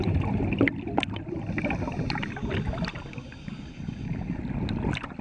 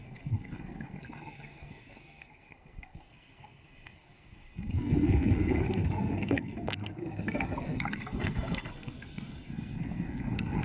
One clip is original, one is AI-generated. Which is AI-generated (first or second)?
second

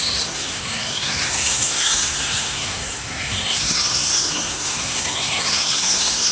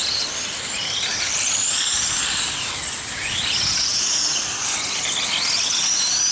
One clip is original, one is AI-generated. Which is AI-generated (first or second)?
first